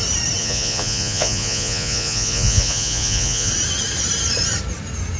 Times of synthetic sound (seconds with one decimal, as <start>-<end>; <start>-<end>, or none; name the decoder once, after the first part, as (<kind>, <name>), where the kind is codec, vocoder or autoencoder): 0.4-3.5 (vocoder, Vocos)